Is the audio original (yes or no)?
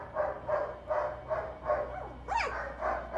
yes